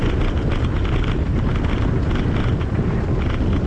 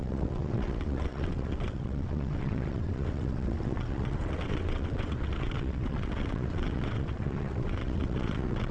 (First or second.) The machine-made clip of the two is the second